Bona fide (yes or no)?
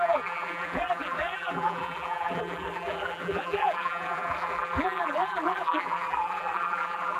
no